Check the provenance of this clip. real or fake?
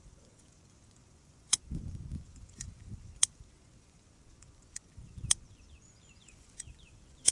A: fake